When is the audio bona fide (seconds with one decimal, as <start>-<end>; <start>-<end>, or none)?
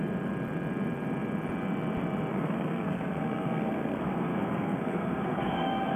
0.0-2.3